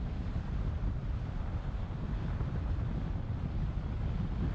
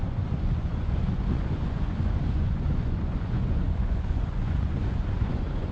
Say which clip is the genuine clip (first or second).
first